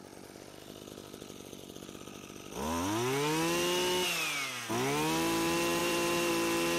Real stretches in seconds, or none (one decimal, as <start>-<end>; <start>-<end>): 0.0-5.8; 6.3-6.8

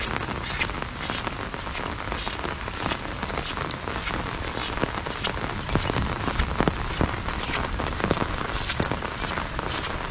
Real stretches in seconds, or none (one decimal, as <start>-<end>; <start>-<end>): 0.0-10.1

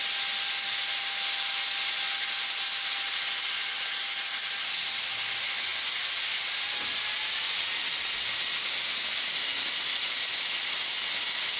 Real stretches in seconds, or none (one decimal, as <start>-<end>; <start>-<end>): 0.0-11.6

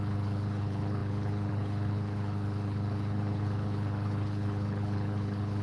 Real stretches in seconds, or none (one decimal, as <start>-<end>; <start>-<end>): none

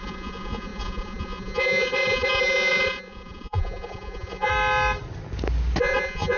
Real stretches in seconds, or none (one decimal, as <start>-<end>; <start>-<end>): 4.5-5.8